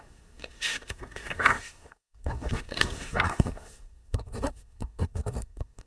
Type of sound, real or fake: fake